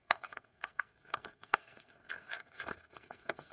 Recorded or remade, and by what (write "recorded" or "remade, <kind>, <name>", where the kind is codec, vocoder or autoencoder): remade, codec, SNAC